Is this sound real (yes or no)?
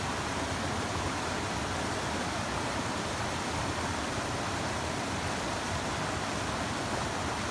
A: yes